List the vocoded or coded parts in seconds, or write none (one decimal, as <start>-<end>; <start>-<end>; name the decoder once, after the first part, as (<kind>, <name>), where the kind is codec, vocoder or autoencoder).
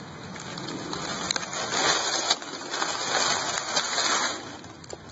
0.5-1.1 (vocoder, BigVGAN v2)